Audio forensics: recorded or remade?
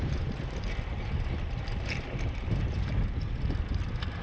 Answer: remade